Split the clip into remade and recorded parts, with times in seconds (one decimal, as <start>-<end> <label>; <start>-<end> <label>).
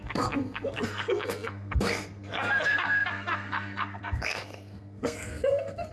0.0-5.9 remade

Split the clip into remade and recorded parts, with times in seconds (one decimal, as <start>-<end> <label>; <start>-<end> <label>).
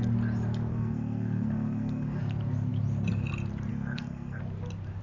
0.0-0.7 recorded; 0.7-2.2 remade; 2.2-3.7 recorded; 3.7-4.4 remade; 4.4-5.0 recorded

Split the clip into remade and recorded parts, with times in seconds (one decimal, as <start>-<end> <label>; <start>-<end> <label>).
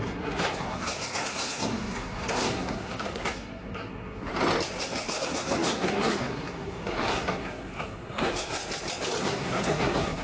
0.0-4.3 remade; 4.3-4.8 recorded; 4.8-8.6 remade; 8.6-9.2 recorded; 9.2-10.2 remade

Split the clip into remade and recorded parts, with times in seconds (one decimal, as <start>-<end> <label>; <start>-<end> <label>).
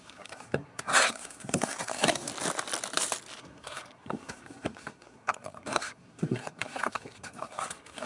0.0-2.3 remade; 2.3-3.4 recorded; 3.4-8.1 remade